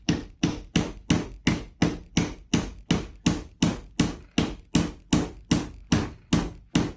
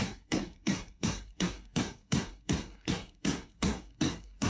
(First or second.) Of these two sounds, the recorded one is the first